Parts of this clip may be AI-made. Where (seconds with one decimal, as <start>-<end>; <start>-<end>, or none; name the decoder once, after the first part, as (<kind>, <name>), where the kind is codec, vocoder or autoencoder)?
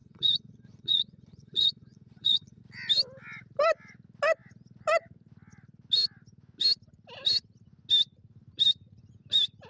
0.0-2.6 (vocoder, Vocos)